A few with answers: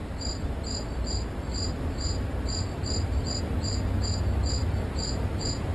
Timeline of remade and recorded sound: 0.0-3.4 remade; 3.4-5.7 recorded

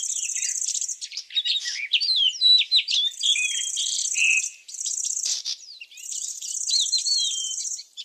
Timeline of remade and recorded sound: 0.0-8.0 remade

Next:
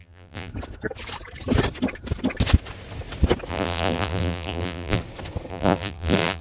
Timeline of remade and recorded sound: 0.0-0.5 remade; 0.5-3.5 recorded; 3.5-5.0 remade; 5.0-5.5 recorded; 5.5-6.4 remade

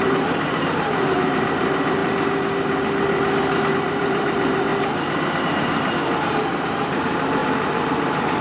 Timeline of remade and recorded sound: 0.0-2.0 remade; 2.0-3.7 recorded; 3.7-4.7 remade; 4.7-5.4 recorded; 5.4-8.4 remade